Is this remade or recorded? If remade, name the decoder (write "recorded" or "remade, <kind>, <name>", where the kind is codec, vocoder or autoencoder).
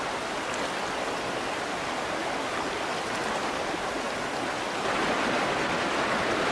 recorded